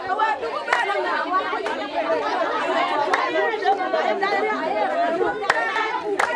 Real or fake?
real